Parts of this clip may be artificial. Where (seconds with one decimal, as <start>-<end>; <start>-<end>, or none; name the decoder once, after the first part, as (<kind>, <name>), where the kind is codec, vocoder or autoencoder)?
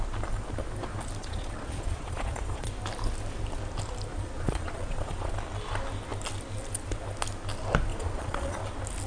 1.2-2.7 (vocoder, Vocos); 4.1-5.3; 7.9-8.6